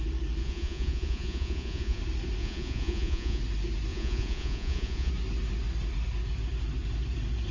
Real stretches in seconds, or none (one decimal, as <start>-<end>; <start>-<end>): 0.0-0.4; 2.0-2.4; 3.4-3.9; 5.1-7.5